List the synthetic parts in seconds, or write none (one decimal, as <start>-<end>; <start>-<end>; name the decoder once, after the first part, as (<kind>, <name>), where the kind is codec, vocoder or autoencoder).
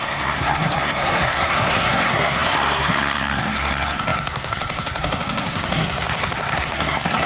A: 0.0-7.3 (codec, SNAC)